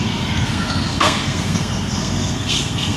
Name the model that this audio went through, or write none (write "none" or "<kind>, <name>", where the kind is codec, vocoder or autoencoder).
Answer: codec, SNAC